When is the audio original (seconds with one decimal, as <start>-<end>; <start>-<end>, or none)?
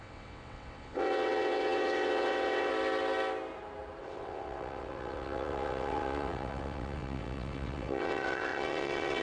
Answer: 2.7-4.0